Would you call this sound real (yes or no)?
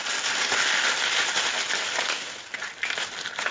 yes